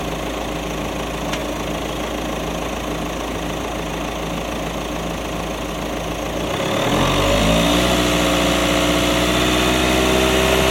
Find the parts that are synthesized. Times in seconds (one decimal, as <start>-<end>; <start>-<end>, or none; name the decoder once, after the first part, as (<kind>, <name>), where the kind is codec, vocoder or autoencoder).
none